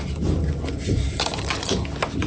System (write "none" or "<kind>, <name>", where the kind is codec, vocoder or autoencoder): none